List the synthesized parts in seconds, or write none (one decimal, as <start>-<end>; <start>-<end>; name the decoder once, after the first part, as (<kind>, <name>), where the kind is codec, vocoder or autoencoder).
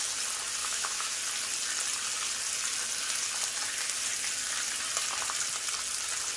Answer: 0.6-1.2 (autoencoder, DAC-VAE)